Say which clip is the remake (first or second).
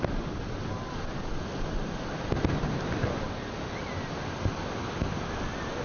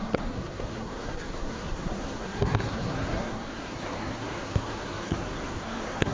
second